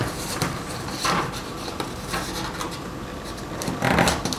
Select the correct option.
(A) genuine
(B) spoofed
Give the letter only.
A